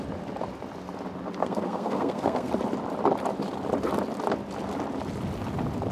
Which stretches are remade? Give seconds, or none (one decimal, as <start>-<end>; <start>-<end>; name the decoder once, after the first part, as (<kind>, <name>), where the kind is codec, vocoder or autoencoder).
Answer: 1.4-2.5 (codec, SNAC)